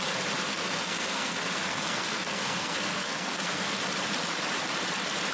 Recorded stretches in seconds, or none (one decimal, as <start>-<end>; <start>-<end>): 0.0-0.5; 3.7-5.3